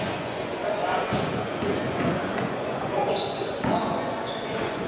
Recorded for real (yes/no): no